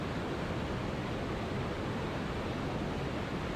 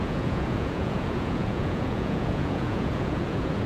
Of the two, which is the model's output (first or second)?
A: second